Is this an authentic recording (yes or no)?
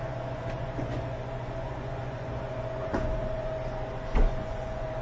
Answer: no